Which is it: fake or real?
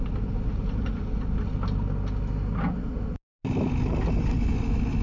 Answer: real